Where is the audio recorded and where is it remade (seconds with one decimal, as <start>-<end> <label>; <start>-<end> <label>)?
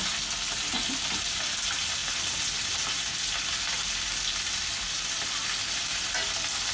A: 0.0-6.7 recorded